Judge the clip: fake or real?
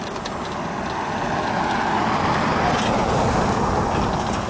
real